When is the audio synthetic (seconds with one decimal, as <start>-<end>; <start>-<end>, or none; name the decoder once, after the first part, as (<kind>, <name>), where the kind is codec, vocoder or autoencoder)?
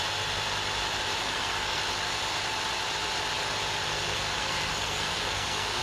1.2-1.8 (codec, SNAC); 3.9-5.8